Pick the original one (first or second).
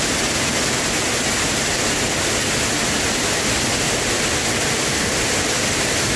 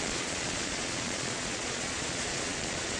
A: first